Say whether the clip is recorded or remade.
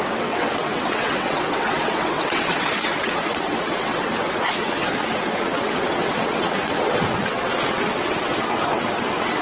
remade